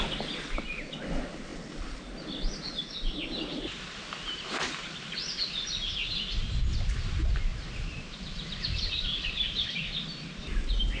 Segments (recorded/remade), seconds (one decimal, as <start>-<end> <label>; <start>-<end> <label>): 0.0-1.5 recorded; 1.5-2.7 remade; 2.7-7.5 recorded; 7.5-9.7 remade; 9.7-11.0 recorded

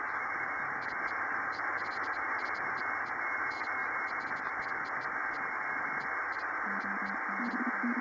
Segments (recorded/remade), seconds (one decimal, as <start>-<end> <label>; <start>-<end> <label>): 0.0-8.0 recorded

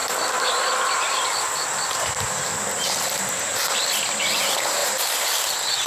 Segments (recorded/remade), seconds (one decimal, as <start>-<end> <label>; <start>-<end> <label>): 0.0-3.3 recorded; 3.3-5.9 remade

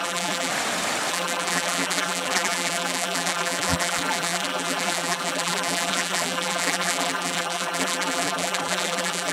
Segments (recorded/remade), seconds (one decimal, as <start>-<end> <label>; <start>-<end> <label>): 0.0-0.5 remade; 0.5-1.1 recorded; 1.1-9.3 remade

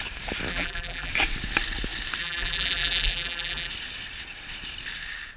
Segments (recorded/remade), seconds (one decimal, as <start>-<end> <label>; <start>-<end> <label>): 0.0-0.5 recorded; 0.5-1.1 remade; 1.1-2.2 recorded; 2.2-3.7 remade; 3.7-5.4 recorded

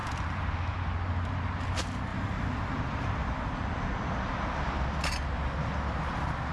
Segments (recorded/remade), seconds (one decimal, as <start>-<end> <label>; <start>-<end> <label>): 0.0-2.1 recorded; 2.1-3.4 remade; 3.4-6.5 recorded

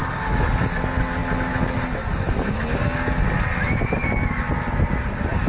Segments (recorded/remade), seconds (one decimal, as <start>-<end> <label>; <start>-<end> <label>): 0.0-5.5 recorded

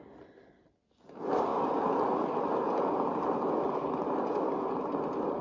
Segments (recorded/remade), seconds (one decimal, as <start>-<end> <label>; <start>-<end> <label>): 0.0-5.4 recorded